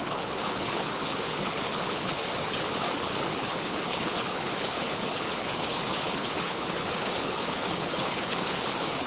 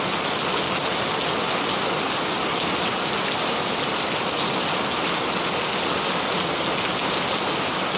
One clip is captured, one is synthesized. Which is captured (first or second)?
second